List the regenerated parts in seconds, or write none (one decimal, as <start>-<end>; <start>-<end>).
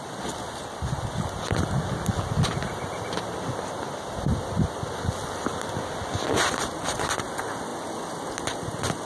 none